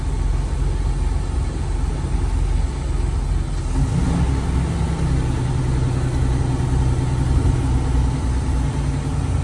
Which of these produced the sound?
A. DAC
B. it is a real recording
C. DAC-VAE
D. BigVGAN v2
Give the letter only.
B